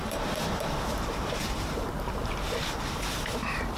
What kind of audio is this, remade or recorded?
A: remade